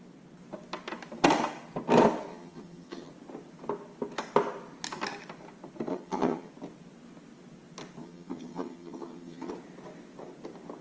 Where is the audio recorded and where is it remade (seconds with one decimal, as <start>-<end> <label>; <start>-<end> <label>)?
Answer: 0.0-2.3 recorded; 2.3-3.1 remade; 3.1-5.9 recorded; 5.9-6.5 remade; 6.5-8.0 recorded; 8.0-9.5 remade; 9.5-10.8 recorded